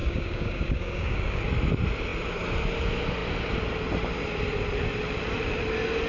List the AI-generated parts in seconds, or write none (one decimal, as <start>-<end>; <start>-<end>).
0.0-1.4